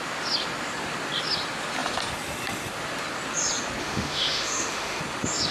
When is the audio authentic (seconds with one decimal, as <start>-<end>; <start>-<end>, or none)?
0.0-3.8; 5.0-5.5